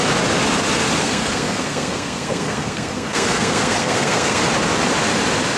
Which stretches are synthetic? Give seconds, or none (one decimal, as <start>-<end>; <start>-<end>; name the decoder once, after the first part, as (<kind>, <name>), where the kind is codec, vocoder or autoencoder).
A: 1.0-4.4 (codec, SNAC)